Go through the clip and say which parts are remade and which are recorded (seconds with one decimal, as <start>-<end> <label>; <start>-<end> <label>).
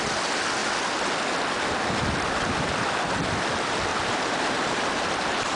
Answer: 0.0-3.9 recorded; 3.9-4.9 remade; 4.9-5.6 recorded